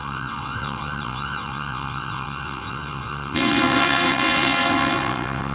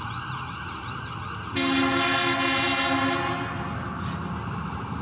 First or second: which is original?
second